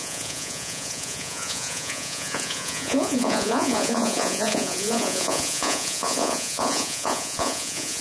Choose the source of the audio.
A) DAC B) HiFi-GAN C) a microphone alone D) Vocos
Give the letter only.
D